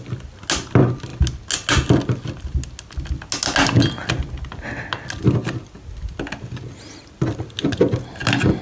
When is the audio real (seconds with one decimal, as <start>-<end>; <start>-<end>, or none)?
0.0-8.6